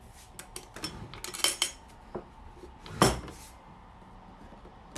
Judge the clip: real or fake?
real